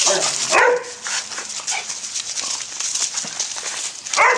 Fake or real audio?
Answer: real